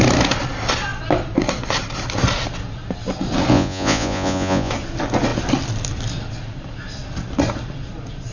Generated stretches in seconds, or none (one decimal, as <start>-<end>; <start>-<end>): 3.5-4.7